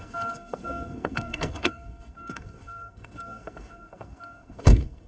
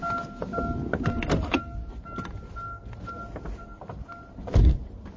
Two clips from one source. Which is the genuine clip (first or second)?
second